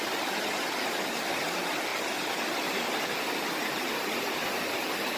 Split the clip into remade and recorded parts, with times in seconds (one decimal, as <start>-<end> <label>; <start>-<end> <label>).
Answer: 0.0-1.9 recorded; 1.9-5.2 remade